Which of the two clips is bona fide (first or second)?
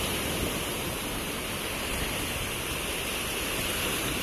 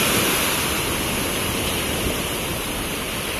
first